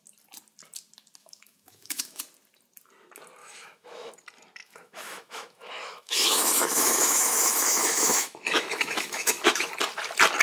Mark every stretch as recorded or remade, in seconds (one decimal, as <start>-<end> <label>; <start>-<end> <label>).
0.0-1.2 recorded; 1.2-2.2 remade; 2.2-3.4 recorded; 3.4-4.1 remade; 4.1-4.6 recorded; 4.6-9.7 remade; 9.7-10.4 recorded